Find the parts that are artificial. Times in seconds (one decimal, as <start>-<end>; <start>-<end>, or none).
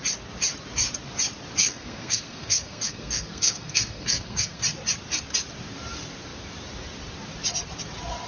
1.6-4.6